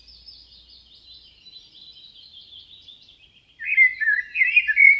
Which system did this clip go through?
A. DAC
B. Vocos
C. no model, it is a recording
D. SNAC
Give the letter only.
C